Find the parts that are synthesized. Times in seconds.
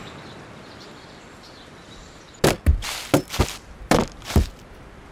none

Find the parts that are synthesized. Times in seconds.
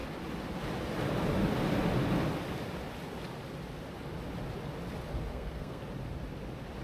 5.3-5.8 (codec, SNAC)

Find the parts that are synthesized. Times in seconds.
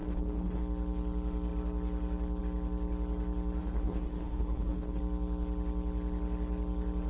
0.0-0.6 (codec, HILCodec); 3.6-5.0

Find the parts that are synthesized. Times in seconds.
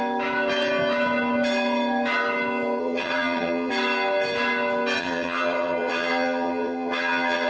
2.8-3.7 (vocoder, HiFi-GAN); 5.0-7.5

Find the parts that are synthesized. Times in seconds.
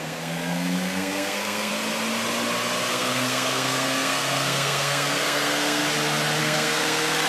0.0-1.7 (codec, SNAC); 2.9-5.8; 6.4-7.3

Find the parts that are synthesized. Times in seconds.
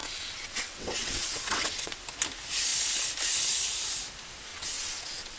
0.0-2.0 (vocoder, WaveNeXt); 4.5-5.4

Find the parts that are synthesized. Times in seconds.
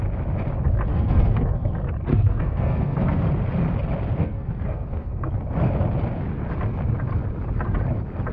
0.9-1.7 (codec, SNAC); 2.1-3.2; 4.2-5.3